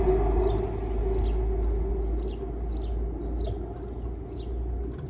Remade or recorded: recorded